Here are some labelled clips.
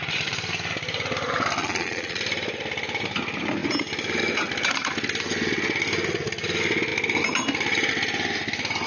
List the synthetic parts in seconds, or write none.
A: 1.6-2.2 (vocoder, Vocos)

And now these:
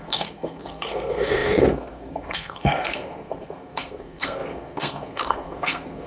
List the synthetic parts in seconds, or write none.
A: 0.0-6.1 (codec, SNAC)

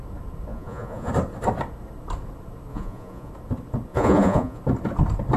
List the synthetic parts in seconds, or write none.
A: 0.5-1.1 (vocoder, Vocos); 2.7-3.3; 3.9-4.6

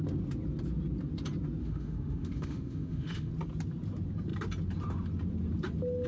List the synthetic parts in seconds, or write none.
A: 1.6-3.3 (autoencoder, DAC-VAE)